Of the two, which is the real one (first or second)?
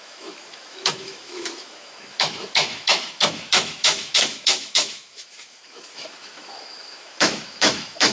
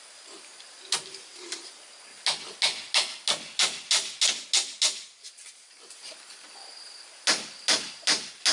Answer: second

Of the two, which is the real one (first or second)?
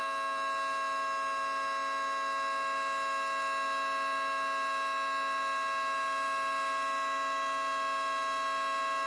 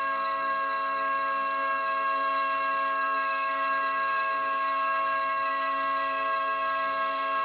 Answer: first